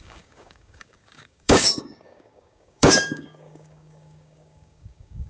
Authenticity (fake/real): fake